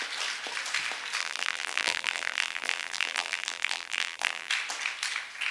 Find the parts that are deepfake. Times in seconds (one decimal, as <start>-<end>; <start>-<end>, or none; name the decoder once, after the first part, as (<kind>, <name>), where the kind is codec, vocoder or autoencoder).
1.2-4.5 (vocoder, BigVGAN v2)